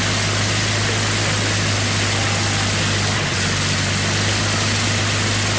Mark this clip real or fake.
real